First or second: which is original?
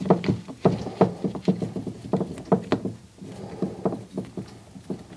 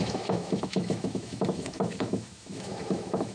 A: first